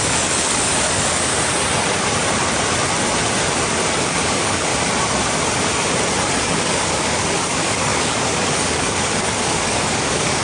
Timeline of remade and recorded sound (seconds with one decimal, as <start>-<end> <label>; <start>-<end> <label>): 0.0-1.3 remade; 1.3-4.0 recorded; 4.0-4.7 remade; 4.7-6.4 recorded; 6.4-10.4 remade